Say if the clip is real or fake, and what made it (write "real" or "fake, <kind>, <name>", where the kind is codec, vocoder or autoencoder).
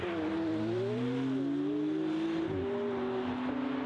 real